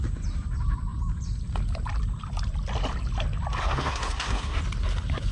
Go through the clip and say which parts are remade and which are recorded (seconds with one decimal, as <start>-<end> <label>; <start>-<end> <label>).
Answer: 0.0-3.6 recorded; 3.6-4.6 remade; 4.6-5.3 recorded